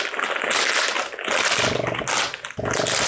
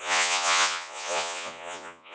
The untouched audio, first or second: first